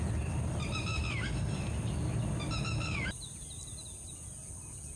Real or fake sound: real